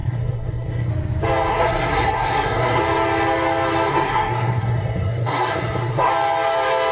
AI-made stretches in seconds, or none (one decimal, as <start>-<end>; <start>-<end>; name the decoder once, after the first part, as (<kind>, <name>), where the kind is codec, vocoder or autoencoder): 0.0-0.9 (codec, SNAC); 1.5-2.8; 3.9-6.1